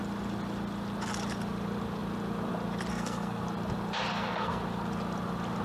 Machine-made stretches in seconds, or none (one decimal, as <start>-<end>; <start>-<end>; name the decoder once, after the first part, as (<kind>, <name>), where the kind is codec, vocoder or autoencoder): 2.9-3.4 (codec, SNAC); 4.1-4.6